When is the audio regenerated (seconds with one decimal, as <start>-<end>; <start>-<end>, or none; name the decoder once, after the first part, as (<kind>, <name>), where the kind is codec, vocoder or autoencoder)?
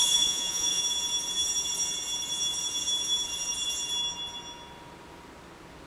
0.0-0.8 (vocoder, Vocos)